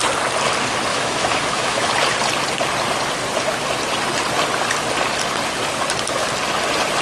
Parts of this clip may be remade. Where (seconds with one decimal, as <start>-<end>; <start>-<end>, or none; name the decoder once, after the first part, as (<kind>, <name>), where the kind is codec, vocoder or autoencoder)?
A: 0.9-1.9 (autoencoder, DAC-VAE)